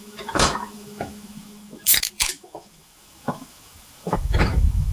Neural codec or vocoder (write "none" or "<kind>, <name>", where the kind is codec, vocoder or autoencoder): autoencoder, DAC-VAE